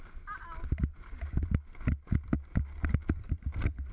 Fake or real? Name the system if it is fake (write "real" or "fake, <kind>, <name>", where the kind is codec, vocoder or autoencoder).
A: real